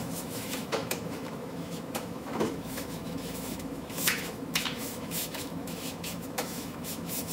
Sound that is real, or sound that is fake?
fake